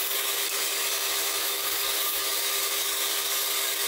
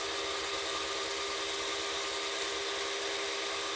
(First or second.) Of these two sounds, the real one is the second